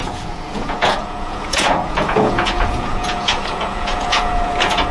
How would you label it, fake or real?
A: fake